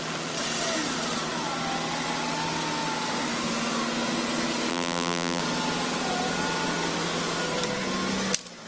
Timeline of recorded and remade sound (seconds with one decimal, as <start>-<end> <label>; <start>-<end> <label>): 0.0-4.7 recorded; 4.7-5.4 remade; 5.4-8.7 recorded